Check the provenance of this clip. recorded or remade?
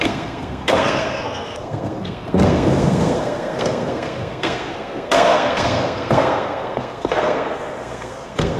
remade